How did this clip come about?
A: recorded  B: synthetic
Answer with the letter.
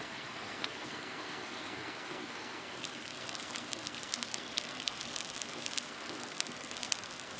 B